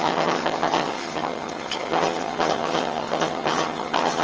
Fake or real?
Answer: fake